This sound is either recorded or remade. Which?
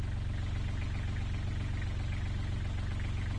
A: recorded